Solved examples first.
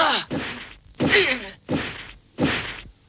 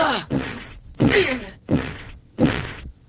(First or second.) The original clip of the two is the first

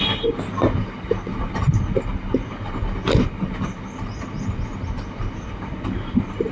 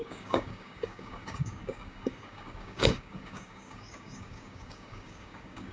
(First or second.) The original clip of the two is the first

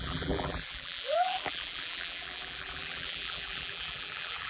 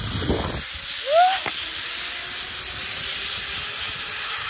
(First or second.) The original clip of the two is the second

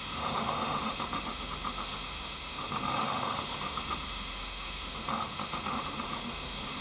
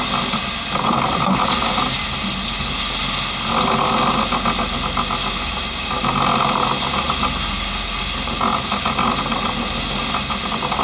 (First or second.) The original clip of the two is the second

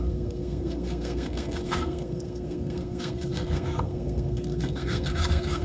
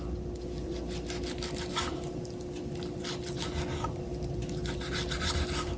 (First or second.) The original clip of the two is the second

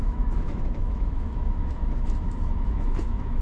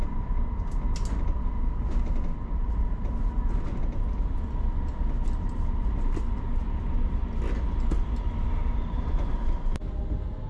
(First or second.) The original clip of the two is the second